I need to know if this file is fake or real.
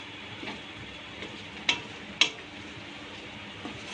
real